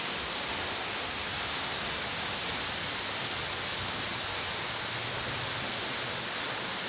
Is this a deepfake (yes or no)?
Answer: no